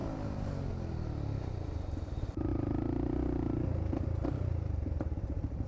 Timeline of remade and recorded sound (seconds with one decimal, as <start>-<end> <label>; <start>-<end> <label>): 0.0-1.4 recorded; 1.4-2.5 remade; 2.5-4.4 recorded; 4.4-5.7 remade